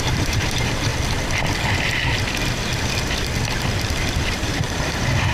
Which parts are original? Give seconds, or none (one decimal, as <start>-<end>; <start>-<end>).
0.9-4.1

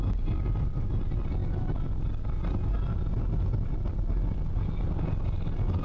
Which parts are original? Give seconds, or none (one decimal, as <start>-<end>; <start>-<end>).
0.0-5.8